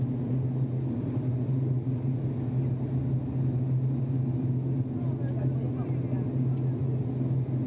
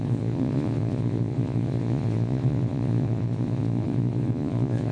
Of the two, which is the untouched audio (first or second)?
first